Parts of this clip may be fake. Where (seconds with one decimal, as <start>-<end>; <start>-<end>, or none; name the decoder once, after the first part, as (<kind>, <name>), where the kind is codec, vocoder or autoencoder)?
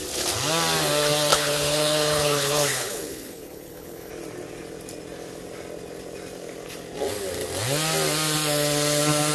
1.3-4.1 (codec, HILCodec)